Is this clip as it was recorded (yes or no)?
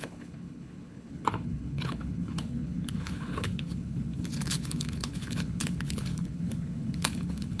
no